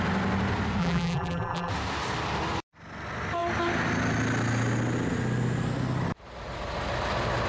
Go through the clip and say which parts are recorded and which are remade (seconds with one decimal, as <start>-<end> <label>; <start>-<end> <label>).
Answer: 0.0-0.8 recorded; 0.8-1.7 remade; 1.7-7.5 recorded